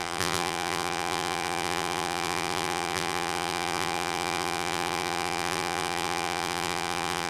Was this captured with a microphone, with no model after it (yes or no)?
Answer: no